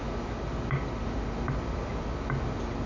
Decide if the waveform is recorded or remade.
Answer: recorded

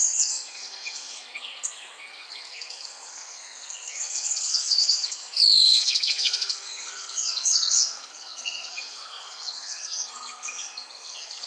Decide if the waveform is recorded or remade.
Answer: remade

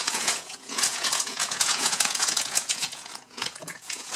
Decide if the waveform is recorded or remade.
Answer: remade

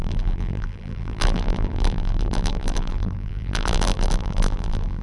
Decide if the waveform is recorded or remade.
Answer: remade